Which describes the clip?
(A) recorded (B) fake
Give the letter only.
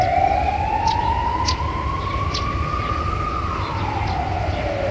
A